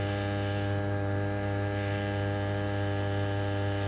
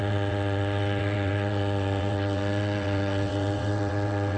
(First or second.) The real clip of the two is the first